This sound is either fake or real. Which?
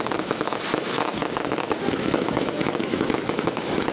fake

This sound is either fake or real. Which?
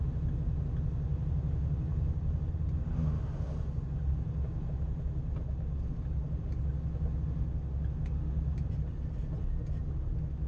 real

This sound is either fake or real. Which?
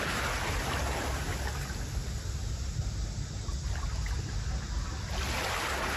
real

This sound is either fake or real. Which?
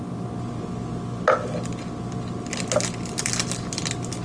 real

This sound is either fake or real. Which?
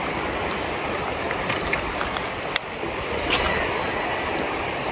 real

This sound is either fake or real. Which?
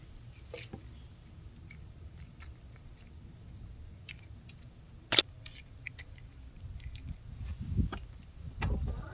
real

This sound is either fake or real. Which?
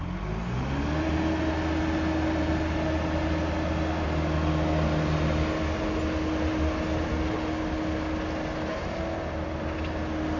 real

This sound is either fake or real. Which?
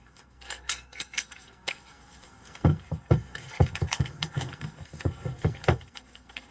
fake